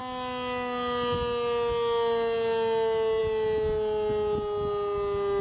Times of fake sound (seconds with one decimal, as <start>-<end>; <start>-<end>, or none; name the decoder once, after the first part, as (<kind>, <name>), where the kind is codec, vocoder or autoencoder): none